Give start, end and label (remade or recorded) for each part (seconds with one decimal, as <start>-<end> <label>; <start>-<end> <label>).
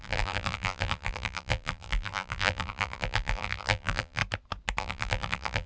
0.0-4.2 remade; 4.2-4.8 recorded; 4.8-5.7 remade